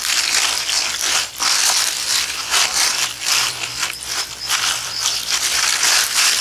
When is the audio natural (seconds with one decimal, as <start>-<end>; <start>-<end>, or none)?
none